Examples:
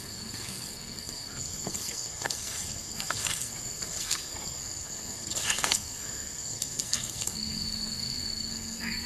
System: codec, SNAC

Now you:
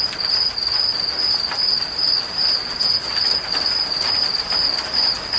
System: none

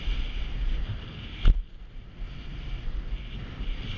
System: none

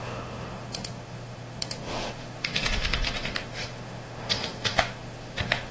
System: autoencoder, DAC-VAE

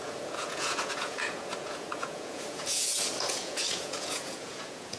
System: vocoder, Vocos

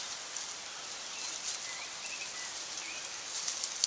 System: none